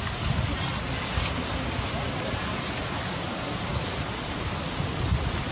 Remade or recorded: recorded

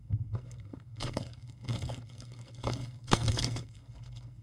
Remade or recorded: remade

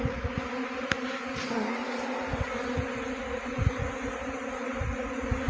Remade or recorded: recorded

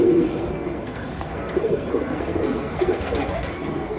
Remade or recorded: remade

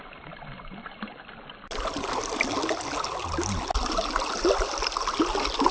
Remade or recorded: recorded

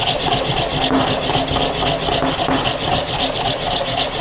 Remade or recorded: recorded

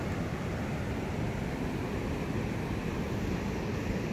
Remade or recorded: recorded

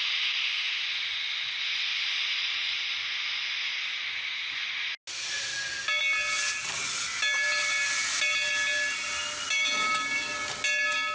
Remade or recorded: recorded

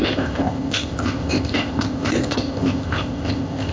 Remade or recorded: remade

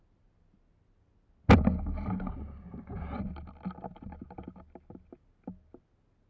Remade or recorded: recorded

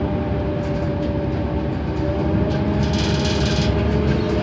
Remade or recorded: recorded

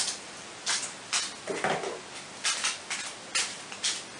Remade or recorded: recorded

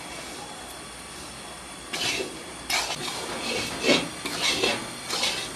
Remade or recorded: recorded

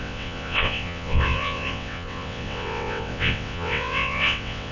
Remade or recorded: remade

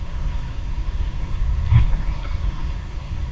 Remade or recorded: remade